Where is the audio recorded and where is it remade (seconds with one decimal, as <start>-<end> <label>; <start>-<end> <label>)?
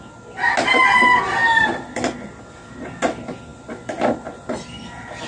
0.0-5.3 recorded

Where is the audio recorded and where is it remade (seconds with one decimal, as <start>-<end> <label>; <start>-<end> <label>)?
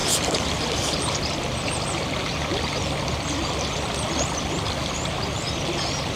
0.0-6.2 recorded